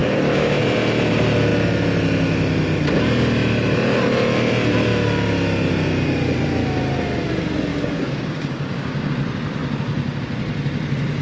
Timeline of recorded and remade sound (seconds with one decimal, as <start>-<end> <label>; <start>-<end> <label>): 0.0-0.6 remade; 0.6-7.7 recorded; 7.7-9.1 remade; 9.1-11.2 recorded